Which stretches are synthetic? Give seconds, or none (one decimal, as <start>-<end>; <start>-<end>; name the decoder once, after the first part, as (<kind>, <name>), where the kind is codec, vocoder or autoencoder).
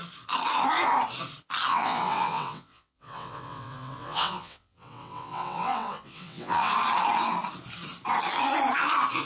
1.7-6.7 (vocoder, WaveNeXt)